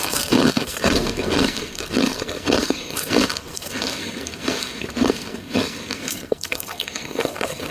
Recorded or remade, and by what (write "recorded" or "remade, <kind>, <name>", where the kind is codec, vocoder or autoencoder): remade, codec, SNAC